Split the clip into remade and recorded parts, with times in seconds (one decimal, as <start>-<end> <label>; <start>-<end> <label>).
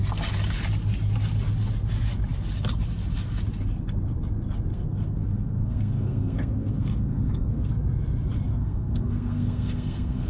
0.0-4.7 recorded; 4.7-7.7 remade; 7.7-8.5 recorded; 8.5-10.3 remade